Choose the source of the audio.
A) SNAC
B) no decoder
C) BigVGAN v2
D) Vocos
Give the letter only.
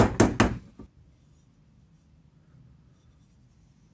B